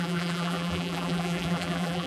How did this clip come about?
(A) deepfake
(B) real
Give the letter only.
A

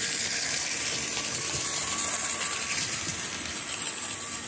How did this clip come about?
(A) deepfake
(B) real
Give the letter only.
A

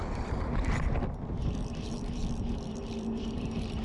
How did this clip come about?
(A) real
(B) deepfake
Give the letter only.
B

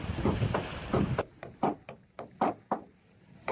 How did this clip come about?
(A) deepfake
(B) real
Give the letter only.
A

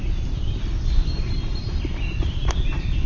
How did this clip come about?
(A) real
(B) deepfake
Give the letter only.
A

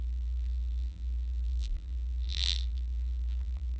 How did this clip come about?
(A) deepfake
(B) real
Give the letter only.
A